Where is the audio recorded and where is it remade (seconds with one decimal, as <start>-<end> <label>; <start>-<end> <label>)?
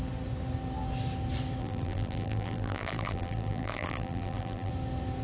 0.0-1.6 recorded; 1.6-4.7 remade; 4.7-5.2 recorded